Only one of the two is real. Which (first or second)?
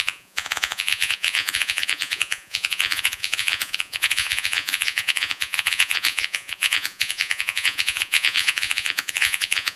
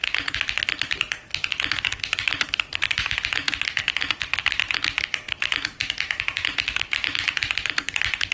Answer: second